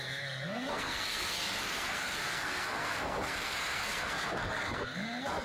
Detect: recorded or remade remade